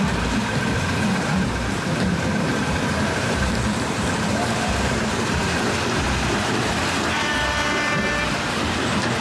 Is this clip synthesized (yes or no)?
yes